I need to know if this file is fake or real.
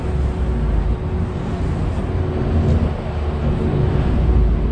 real